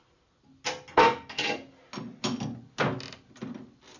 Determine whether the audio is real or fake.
real